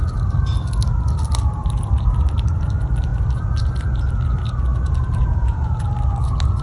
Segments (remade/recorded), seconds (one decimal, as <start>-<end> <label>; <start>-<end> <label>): 0.0-1.6 recorded; 1.6-2.6 remade; 2.6-3.1 recorded; 3.1-3.8 remade; 3.8-4.7 recorded; 4.7-5.7 remade; 5.7-6.6 recorded